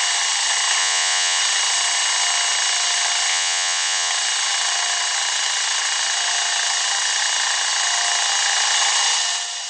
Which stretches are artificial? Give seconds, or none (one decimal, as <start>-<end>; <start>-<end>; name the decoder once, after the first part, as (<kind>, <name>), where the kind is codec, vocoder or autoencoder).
0.8-1.4 (vocoder, Vocos); 3.3-4.1